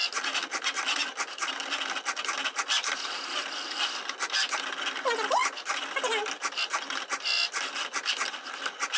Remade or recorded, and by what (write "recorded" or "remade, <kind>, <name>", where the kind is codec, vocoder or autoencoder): recorded